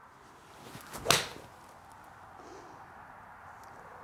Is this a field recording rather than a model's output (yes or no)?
yes